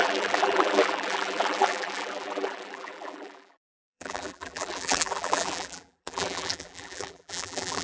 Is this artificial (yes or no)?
yes